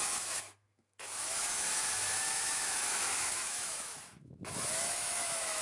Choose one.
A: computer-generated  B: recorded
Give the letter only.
A